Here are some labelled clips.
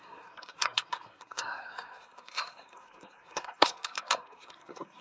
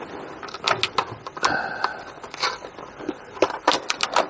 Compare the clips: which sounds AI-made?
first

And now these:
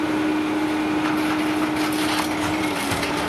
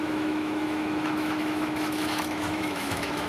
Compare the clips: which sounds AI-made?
second